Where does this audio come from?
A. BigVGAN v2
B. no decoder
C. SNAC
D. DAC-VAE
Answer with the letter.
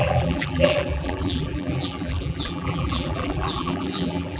A